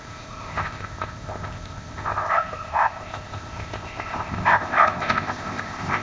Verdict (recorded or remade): remade